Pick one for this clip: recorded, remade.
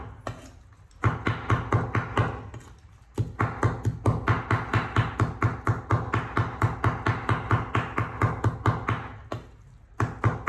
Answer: recorded